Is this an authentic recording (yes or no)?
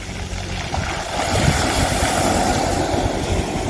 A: yes